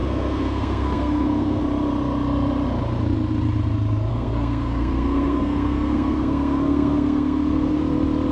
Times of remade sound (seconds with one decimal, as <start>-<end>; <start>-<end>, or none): 0.0-1.6; 4.1-7.8